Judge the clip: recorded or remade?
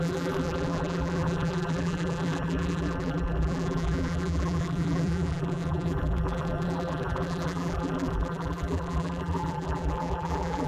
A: remade